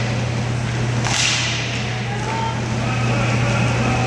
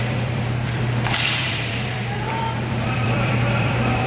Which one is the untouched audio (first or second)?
first